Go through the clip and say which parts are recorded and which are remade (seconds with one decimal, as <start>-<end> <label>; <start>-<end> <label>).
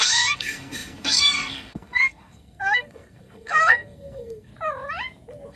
0.0-4.5 remade; 4.5-5.5 recorded